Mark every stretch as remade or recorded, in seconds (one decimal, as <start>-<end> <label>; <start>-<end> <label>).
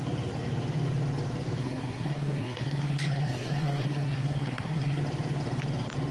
0.0-1.6 recorded; 1.6-5.0 remade; 5.0-6.1 recorded